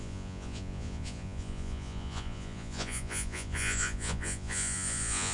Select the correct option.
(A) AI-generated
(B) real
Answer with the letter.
A